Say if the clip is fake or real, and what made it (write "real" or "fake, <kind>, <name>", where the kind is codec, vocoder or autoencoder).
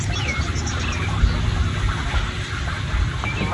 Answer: real